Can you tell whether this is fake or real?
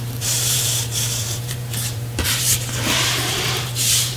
fake